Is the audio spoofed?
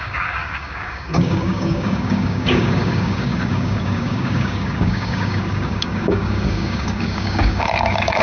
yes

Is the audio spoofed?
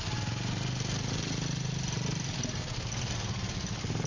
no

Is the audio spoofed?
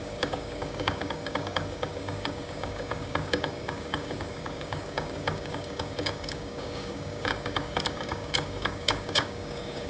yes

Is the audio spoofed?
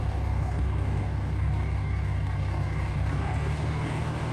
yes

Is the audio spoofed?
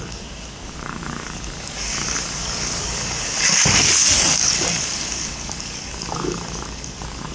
yes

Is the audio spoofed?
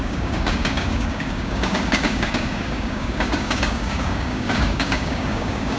yes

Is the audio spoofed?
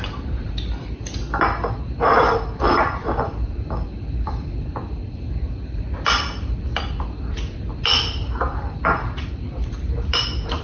no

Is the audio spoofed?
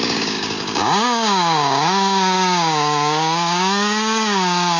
yes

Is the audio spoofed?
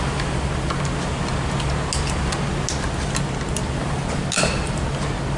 no